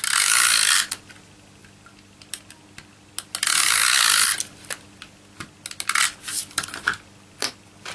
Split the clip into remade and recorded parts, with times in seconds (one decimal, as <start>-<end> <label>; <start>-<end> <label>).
0.0-7.9 recorded